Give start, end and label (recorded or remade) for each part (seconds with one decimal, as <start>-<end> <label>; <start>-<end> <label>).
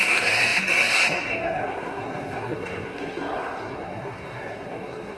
0.0-5.2 remade